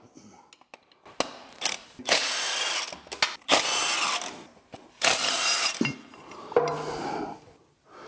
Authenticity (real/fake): real